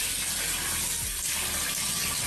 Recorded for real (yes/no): yes